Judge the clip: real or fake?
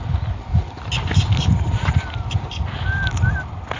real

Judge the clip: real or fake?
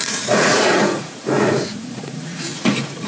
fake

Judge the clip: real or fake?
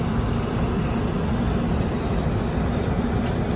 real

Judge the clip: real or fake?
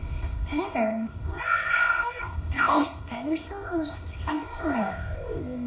fake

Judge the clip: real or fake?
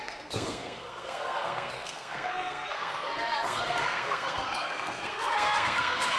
fake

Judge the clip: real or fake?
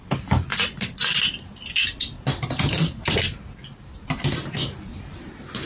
real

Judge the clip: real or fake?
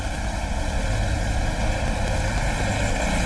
real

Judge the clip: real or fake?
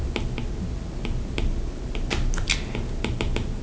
real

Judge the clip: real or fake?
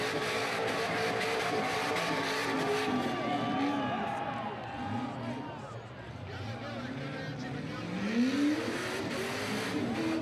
real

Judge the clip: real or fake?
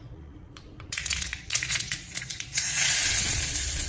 fake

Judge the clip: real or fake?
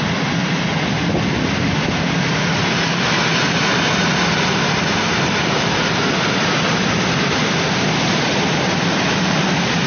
real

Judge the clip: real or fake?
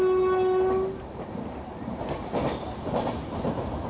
real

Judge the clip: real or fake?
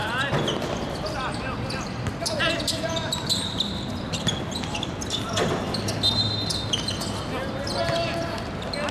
real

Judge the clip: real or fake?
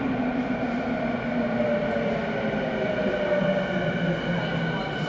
real